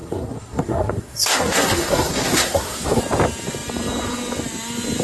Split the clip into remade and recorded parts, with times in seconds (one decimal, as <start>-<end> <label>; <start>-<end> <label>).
0.0-3.0 remade; 3.0-5.0 recorded